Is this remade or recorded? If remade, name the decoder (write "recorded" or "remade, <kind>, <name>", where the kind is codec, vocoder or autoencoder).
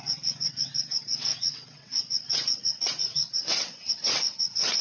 remade, vocoder, WaveNeXt